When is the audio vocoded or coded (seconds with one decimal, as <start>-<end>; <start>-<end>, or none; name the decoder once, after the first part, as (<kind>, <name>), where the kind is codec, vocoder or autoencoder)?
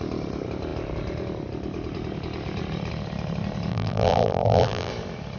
3.7-4.9 (vocoder, BigVGAN v2)